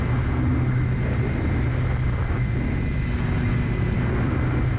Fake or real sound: real